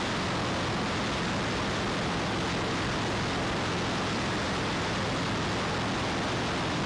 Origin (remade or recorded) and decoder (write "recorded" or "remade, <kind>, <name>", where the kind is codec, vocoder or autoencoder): recorded